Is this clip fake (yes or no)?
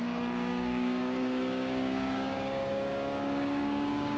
yes